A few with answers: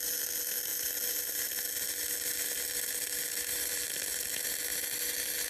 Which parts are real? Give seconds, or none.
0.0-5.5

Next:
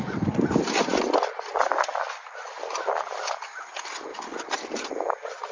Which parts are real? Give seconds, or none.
0.0-2.8; 3.6-4.1; 4.9-5.5

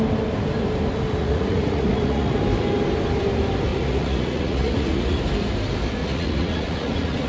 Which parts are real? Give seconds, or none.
0.0-1.2; 2.4-3.7; 5.2-6.0

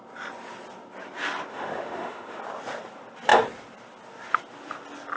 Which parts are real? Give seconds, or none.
0.0-1.5; 2.4-5.2